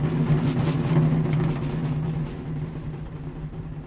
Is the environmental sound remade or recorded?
recorded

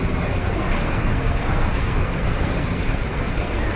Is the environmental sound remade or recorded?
remade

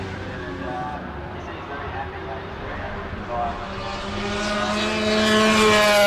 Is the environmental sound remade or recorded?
recorded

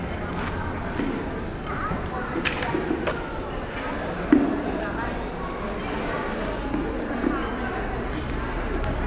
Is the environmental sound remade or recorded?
recorded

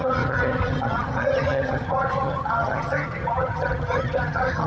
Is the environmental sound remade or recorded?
remade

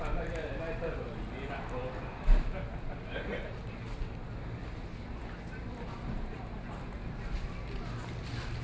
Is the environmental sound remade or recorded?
recorded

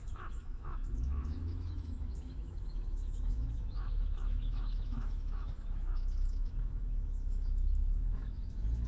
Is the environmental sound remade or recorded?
remade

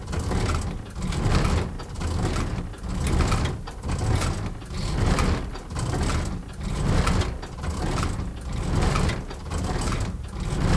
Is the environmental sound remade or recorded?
recorded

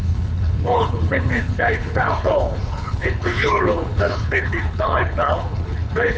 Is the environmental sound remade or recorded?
remade